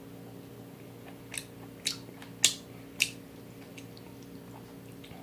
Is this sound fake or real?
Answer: real